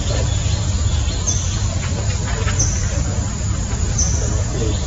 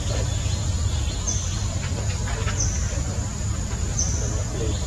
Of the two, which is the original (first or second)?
second